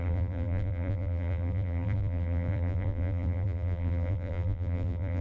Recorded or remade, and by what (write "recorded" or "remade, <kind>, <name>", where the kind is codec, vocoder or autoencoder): remade, vocoder, BigVGAN v2